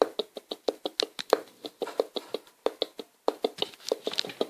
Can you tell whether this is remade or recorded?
recorded